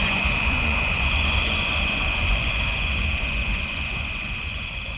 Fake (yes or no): yes